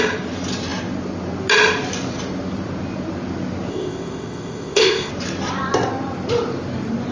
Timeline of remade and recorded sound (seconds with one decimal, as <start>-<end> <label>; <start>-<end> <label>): 0.0-3.7 recorded; 3.7-5.1 remade; 5.1-7.1 recorded